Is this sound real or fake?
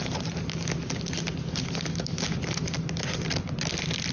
real